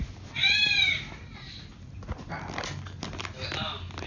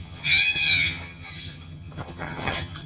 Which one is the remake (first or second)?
second